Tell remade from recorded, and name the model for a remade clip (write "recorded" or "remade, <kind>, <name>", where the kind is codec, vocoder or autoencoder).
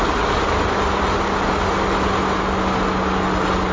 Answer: recorded